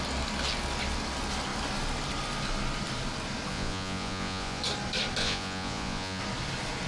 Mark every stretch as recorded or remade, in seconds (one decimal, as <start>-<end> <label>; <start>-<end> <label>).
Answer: 0.0-3.5 recorded; 3.5-4.6 remade; 4.6-5.2 recorded; 5.2-6.2 remade; 6.2-6.9 recorded